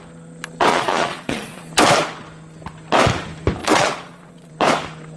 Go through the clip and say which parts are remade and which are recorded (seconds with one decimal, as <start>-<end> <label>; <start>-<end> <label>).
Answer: 0.0-0.7 recorded; 0.7-1.7 remade; 1.7-3.6 recorded; 3.6-4.5 remade; 4.5-5.2 recorded